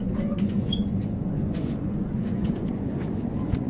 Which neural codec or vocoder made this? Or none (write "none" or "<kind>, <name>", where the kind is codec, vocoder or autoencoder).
vocoder, Vocos